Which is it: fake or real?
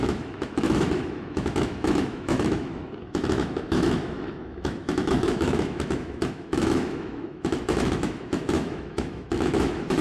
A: fake